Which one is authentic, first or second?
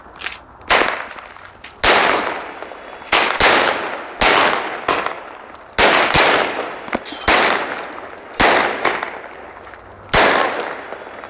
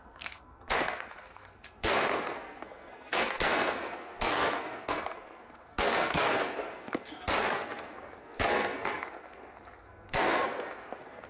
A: first